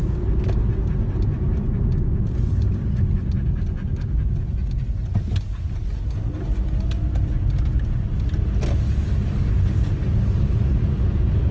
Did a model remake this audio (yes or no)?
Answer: no